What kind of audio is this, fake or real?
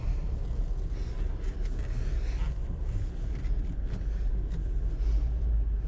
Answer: real